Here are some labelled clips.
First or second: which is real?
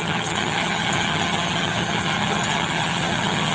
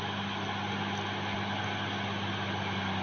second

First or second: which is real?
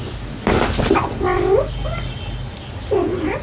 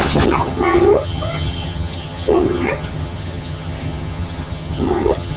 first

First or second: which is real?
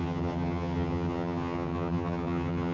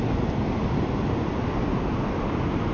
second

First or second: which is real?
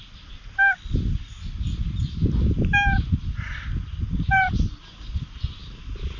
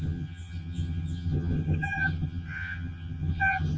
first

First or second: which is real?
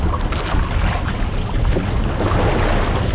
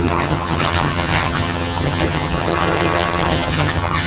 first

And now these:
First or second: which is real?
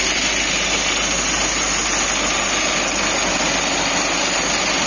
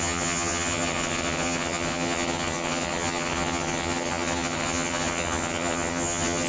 first